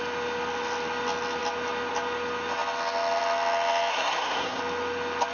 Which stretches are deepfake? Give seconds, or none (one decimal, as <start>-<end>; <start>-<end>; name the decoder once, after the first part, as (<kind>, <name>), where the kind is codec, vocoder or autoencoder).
3.9-4.6 (codec, SNAC)

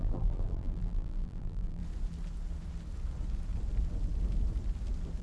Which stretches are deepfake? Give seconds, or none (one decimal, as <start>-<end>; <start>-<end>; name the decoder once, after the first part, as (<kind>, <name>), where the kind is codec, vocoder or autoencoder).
0.0-1.8 (vocoder, BigVGAN v2)

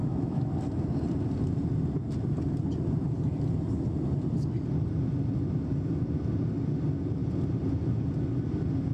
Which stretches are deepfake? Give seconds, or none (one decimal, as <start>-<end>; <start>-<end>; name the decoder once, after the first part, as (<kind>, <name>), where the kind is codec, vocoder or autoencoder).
0.0-0.5 (autoencoder, DAC-VAE)

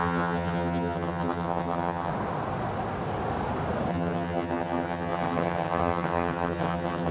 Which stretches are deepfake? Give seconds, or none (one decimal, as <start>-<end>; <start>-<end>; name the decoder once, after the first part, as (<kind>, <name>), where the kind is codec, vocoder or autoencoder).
0.0-2.1 (vocoder, HiFi-GAN); 3.9-7.1

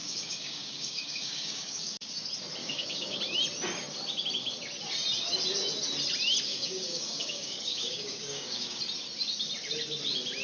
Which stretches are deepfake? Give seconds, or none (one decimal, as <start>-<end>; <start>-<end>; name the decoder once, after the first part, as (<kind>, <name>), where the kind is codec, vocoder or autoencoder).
0.0-2.1 (codec, DAC); 2.6-3.2; 6.5-8.8